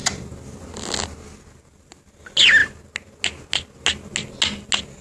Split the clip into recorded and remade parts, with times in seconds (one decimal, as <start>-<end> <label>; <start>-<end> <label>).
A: 0.0-5.0 recorded